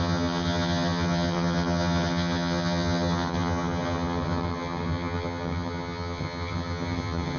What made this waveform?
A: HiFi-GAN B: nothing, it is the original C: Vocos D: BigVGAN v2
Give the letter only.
A